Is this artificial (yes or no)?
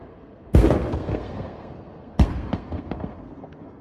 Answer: yes